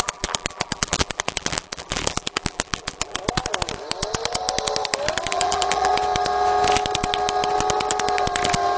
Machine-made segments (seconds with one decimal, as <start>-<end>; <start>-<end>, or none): 0.0-3.2; 5.3-5.9